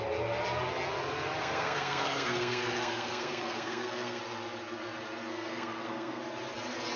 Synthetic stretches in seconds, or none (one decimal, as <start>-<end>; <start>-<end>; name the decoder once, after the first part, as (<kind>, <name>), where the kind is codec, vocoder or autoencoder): 1.4-4.2 (codec, SNAC); 5.3-6.2